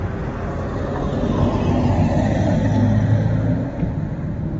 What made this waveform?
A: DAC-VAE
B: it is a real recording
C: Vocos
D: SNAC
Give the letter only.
B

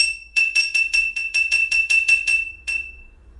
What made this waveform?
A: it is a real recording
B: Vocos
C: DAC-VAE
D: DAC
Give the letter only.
B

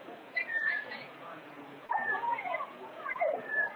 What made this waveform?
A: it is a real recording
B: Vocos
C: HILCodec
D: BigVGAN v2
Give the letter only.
B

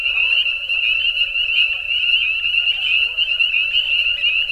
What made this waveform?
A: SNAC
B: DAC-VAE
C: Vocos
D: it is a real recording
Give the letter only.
D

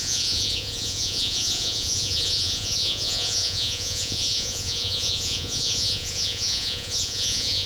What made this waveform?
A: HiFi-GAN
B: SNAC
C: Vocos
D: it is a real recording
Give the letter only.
C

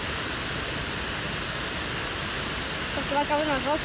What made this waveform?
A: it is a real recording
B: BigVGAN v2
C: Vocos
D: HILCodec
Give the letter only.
A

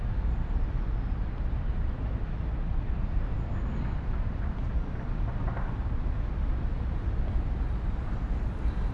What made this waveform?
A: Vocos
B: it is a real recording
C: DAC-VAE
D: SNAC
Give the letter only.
B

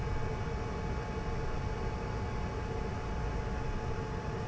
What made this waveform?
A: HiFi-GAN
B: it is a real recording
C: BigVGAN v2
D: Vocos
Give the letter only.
B